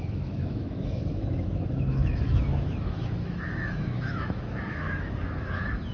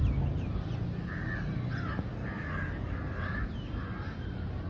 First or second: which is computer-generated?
first